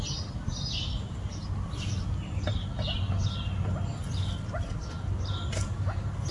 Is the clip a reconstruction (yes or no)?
no